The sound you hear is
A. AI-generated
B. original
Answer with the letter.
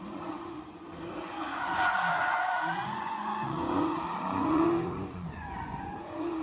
A